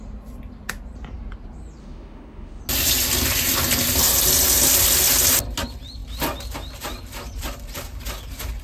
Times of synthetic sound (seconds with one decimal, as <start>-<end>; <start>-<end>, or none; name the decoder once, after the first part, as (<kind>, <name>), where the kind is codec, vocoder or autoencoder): 1.8-2.6 (autoencoder, DAC-VAE)